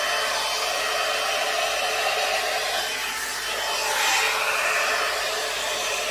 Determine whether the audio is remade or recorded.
recorded